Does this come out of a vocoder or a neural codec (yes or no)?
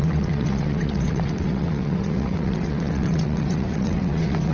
yes